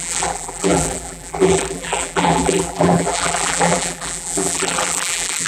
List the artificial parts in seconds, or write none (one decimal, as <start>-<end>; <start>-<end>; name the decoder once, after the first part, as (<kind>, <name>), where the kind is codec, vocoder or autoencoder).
0.0-5.5 (vocoder, BigVGAN v2)